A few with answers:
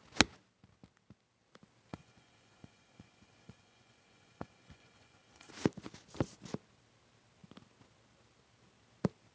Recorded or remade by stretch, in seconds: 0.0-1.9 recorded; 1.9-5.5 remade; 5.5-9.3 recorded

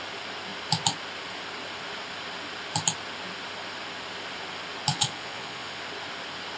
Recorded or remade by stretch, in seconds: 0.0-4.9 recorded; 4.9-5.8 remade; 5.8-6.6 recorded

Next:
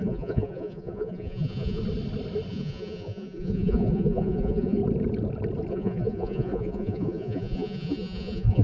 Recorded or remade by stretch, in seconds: 0.0-1.8 remade; 1.8-2.5 recorded; 2.5-4.8 remade; 4.8-5.7 recorded; 5.7-8.6 remade